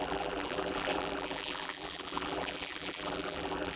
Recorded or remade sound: remade